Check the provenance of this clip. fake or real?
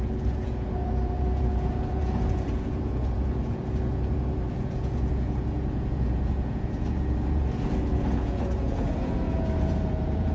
fake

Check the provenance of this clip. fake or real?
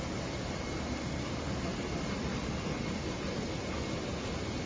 real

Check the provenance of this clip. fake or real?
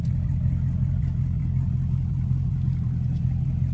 real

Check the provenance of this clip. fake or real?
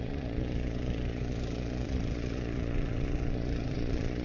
fake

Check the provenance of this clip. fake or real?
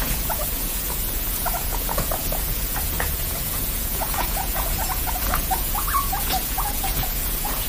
fake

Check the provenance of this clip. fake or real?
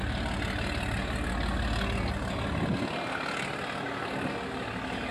real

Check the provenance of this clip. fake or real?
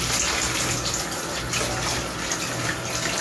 real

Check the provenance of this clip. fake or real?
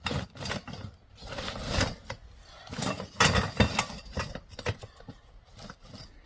real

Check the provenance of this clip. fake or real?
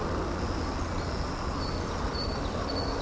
real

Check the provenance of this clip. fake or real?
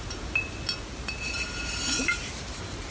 real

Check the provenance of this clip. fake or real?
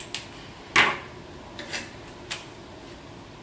real